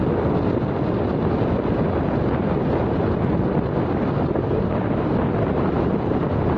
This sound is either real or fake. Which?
real